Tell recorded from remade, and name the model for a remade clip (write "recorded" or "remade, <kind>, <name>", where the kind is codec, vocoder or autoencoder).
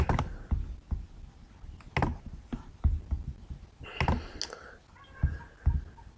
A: recorded